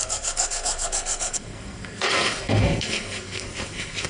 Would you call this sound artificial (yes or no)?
yes